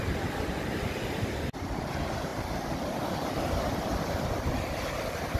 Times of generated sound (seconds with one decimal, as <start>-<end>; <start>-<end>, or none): none